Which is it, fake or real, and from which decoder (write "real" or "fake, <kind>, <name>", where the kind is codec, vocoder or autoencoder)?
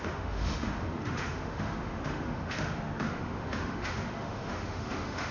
fake, autoencoder, DAC-VAE